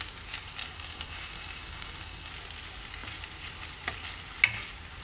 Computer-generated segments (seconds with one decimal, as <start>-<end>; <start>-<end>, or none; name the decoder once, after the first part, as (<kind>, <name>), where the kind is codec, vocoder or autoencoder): 0.6-2.3 (codec, DAC)